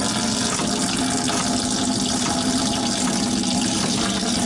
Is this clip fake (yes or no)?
no